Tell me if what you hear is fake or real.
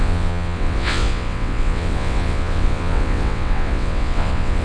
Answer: fake